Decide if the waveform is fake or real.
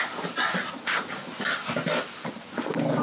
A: real